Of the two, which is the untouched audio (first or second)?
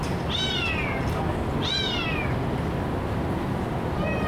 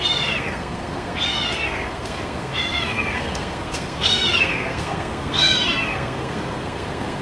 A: first